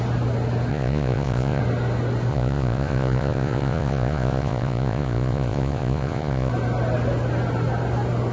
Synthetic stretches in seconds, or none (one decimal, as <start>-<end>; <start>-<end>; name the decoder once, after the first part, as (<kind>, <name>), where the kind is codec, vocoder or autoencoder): 0.7-1.6 (vocoder, Vocos); 2.3-6.5